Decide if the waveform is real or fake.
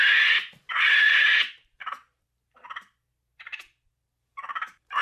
fake